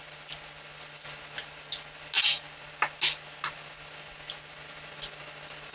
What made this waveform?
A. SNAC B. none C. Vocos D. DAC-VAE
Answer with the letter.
B